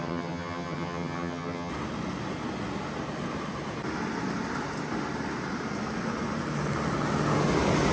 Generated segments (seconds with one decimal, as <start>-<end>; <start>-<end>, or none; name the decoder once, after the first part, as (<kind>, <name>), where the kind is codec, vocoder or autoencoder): 0.0-1.7 (vocoder, HiFi-GAN)